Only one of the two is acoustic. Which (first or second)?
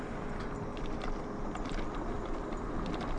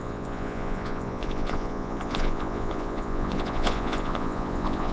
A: first